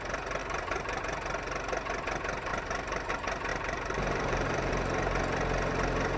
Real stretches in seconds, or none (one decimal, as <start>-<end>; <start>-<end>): 0.0-0.4; 1.0-2.5; 3.1-3.5; 4.7-6.2